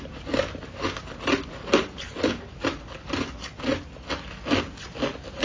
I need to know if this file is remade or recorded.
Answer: recorded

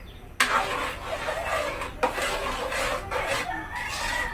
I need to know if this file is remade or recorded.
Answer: recorded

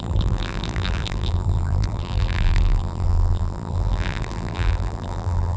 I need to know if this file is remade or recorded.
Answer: remade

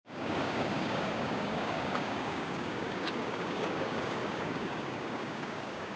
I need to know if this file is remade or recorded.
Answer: remade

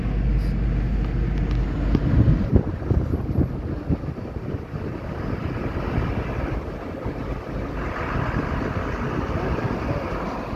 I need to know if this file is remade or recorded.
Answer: recorded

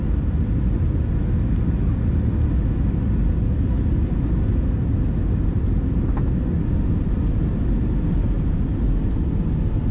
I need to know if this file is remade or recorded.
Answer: recorded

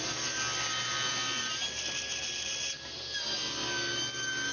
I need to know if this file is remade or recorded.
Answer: recorded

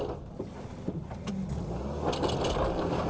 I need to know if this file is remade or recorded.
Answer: recorded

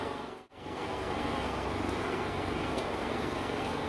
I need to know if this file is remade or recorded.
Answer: remade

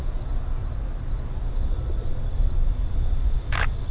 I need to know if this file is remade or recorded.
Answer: recorded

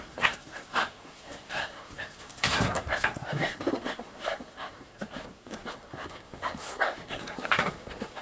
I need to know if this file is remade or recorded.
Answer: remade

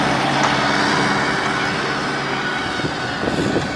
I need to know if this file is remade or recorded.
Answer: recorded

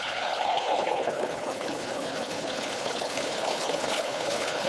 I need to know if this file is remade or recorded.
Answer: remade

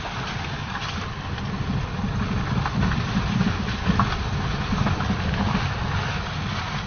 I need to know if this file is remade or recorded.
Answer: recorded